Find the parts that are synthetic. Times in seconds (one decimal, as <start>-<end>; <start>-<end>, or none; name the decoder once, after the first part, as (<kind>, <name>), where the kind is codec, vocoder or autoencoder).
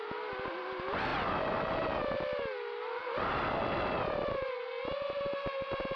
none